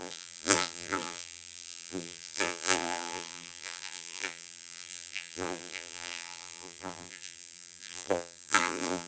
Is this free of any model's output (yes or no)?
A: no